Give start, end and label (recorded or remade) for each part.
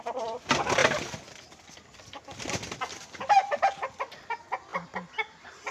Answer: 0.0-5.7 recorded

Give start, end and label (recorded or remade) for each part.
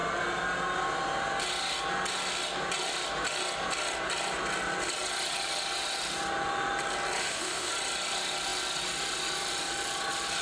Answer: 0.0-7.2 recorded; 7.2-7.7 remade; 7.7-10.4 recorded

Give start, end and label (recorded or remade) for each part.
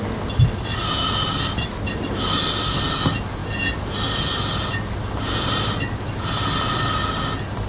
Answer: 0.0-7.7 recorded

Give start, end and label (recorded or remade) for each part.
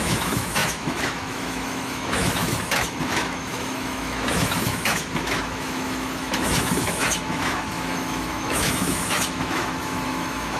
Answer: 0.0-10.6 remade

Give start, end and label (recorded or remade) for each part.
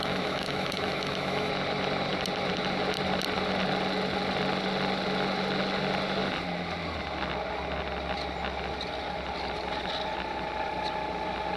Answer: 0.0-1.5 remade; 1.5-11.6 recorded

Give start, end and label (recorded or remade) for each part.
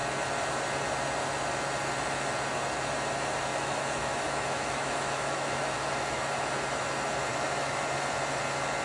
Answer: 0.0-3.5 recorded; 3.5-6.3 remade; 6.3-7.3 recorded; 7.3-7.8 remade; 7.8-8.8 recorded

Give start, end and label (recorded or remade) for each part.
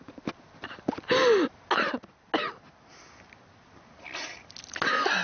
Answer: 0.0-5.2 recorded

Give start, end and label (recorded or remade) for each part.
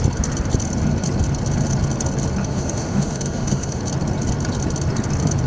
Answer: 0.0-2.4 recorded; 2.4-3.8 remade; 3.8-5.5 recorded